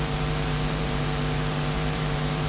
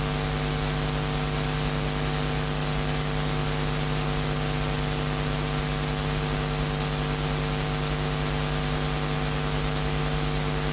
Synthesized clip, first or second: first